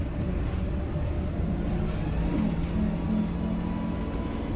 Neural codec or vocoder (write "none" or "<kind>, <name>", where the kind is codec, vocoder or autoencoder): none